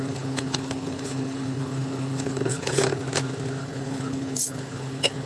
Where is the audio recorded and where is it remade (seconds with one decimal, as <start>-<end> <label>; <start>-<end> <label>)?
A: 0.0-3.0 remade; 3.0-3.6 recorded; 3.6-5.3 remade